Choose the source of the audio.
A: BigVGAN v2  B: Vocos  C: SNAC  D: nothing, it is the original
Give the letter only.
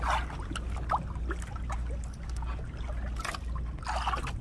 D